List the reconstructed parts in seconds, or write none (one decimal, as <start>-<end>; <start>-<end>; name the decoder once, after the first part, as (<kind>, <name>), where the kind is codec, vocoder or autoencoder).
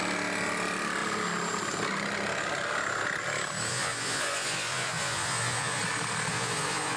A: 3.7-5.8 (vocoder, Vocos); 6.3-7.0